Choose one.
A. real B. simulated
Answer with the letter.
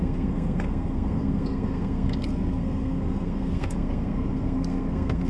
B